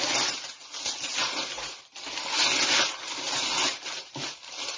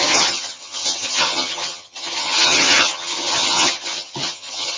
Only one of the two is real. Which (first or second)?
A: first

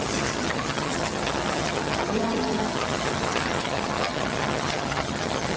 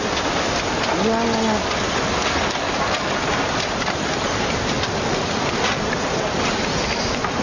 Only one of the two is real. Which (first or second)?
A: second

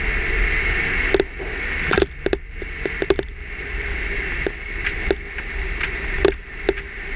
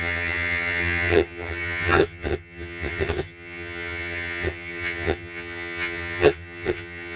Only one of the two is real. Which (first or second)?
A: first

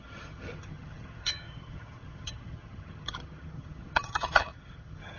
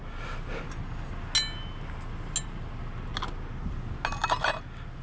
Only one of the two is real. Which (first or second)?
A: second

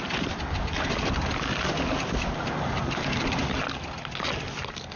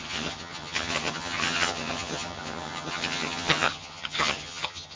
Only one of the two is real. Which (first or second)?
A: first